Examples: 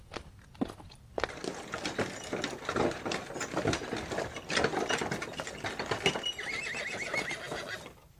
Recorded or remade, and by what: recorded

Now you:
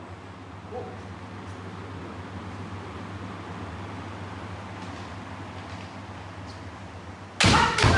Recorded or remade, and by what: recorded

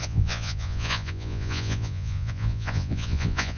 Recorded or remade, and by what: remade, vocoder, Vocos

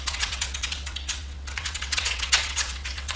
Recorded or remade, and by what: remade, vocoder, WaveNeXt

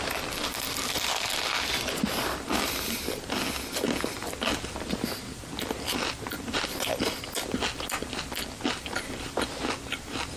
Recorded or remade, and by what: recorded